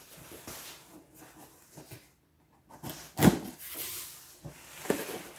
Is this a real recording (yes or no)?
yes